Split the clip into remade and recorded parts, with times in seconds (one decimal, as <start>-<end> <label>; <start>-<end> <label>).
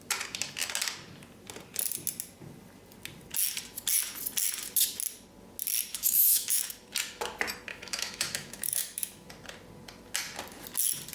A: 0.0-5.9 recorded; 5.9-6.7 remade; 6.7-7.7 recorded; 7.7-9.3 remade; 9.3-11.1 recorded